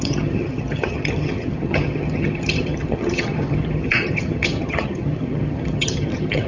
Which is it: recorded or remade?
remade